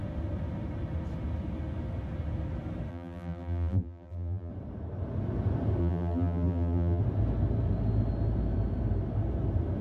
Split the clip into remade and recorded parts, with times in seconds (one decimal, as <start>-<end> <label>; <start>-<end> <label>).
0.0-2.9 recorded; 2.9-4.5 remade; 4.5-5.8 recorded; 5.8-7.0 remade; 7.0-9.8 recorded